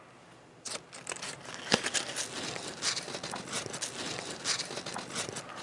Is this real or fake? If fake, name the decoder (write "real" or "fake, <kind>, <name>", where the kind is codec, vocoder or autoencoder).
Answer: real